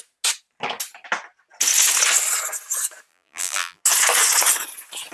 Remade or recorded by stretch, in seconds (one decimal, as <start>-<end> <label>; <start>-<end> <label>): 0.0-3.1 recorded; 3.1-3.8 remade; 3.8-5.1 recorded